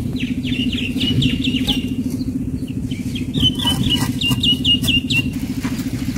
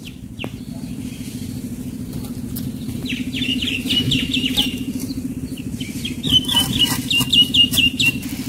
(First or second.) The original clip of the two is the first